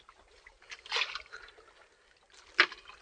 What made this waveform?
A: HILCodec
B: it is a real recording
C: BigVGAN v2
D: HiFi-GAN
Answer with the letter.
B